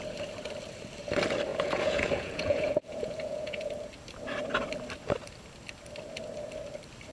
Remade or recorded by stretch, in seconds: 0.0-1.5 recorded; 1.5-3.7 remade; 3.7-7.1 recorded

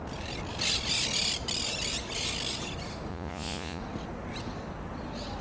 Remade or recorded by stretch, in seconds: 0.0-3.1 recorded; 3.1-3.8 remade; 3.8-5.4 recorded

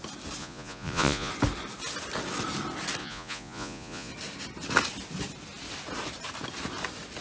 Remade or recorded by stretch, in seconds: 0.0-0.4 recorded; 0.4-1.3 remade; 1.3-3.0 recorded; 3.0-4.1 remade; 4.1-7.2 recorded

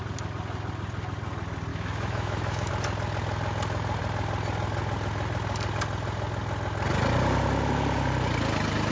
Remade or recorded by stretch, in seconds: 0.0-1.7 recorded; 1.7-2.7 remade; 2.7-8.9 recorded